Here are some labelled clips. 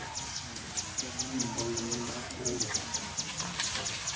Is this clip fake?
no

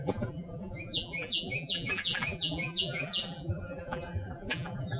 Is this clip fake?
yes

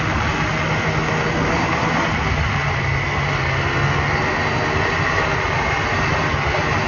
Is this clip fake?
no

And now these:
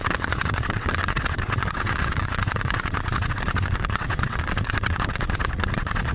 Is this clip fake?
yes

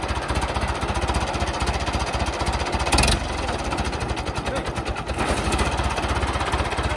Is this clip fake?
no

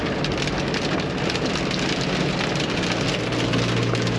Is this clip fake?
no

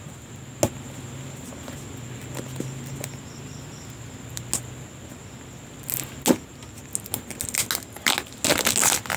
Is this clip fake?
no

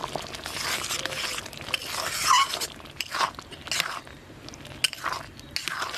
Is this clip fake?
no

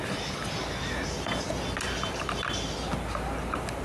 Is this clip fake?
no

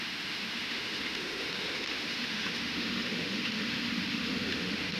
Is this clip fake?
yes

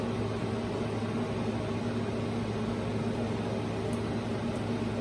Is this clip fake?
no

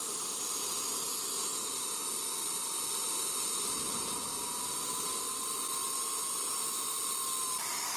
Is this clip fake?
no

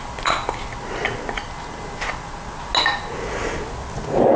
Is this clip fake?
no